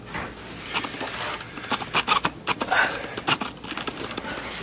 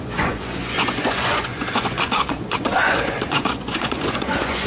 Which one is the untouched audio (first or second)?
first